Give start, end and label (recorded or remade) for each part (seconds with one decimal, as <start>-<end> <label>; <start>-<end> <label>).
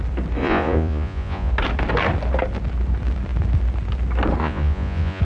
0.0-0.4 recorded; 0.4-1.5 remade; 1.5-4.4 recorded; 4.4-5.2 remade